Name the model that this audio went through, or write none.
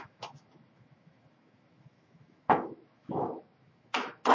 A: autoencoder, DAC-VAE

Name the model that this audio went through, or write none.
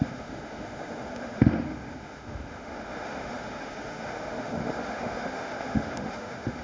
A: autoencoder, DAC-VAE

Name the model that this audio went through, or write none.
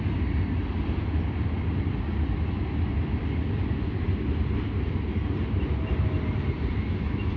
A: none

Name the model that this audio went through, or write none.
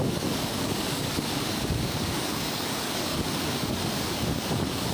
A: codec, DAC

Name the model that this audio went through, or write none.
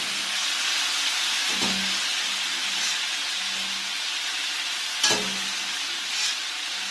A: none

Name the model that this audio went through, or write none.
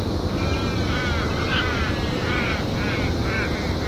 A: none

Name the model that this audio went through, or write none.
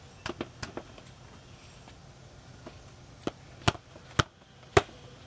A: none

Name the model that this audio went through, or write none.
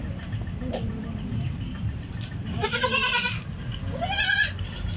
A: none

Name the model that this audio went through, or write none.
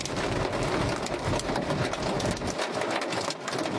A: none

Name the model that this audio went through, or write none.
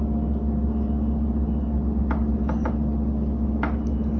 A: none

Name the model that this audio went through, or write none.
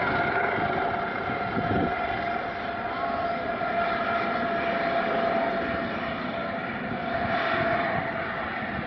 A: none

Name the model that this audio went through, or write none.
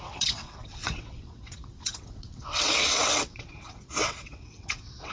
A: vocoder, WaveNeXt